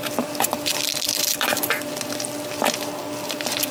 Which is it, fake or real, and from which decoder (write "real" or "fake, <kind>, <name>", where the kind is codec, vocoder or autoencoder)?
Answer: fake, vocoder, BigVGAN v2